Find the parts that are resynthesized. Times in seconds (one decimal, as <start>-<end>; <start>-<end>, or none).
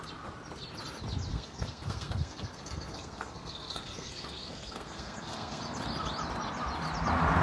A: 1.3-5.6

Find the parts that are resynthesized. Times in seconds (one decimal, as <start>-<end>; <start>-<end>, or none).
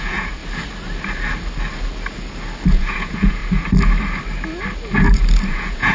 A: 0.0-0.4; 2.7-3.4; 5.5-5.9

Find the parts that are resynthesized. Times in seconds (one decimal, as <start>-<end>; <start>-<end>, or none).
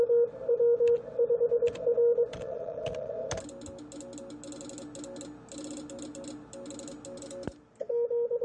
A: 2.3-3.1